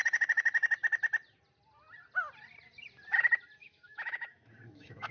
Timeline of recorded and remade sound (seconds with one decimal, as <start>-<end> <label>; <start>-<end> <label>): 0.0-3.6 recorded; 3.6-5.1 remade